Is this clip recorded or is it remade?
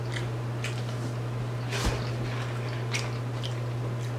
recorded